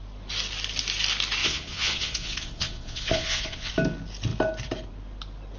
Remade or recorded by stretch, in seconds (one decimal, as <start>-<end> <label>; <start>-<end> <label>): 0.0-1.4 recorded; 1.4-3.7 remade; 3.7-5.6 recorded